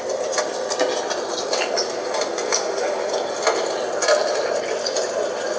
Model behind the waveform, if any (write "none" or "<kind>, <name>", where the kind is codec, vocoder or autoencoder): none